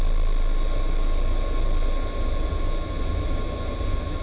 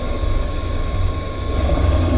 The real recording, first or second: first